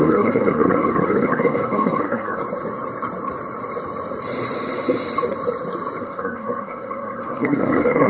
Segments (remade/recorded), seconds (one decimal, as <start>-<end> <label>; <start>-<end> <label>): 0.0-2.4 remade; 2.4-6.0 recorded; 6.0-8.1 remade